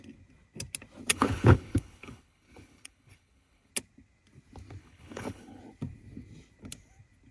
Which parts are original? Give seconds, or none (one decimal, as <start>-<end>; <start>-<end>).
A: 0.0-1.1; 3.7-4.8; 5.6-7.3